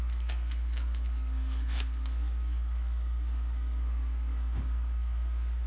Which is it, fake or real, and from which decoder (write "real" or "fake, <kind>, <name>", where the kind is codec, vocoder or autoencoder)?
fake, codec, SNAC